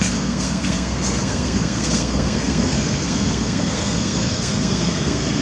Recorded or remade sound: remade